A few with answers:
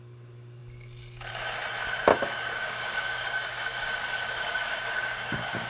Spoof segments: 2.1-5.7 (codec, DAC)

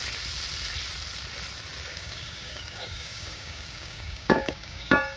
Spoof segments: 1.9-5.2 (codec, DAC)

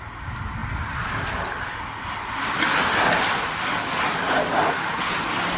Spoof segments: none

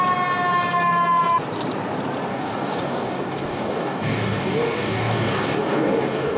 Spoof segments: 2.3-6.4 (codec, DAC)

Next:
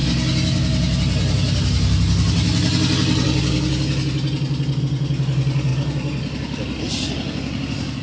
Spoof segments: none

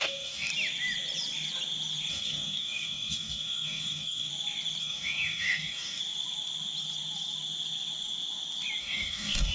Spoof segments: 0.0-0.5 (codec, DAC); 2.1-4.3; 4.8-6.0; 8.8-9.5

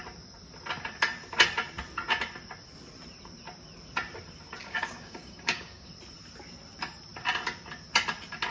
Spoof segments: 4.6-5.9 (codec, DAC)